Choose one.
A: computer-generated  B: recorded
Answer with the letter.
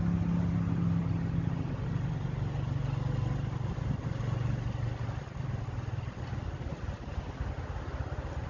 B